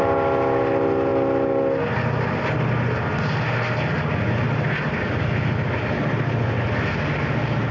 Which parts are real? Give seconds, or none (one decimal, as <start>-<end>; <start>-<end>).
0.0-7.7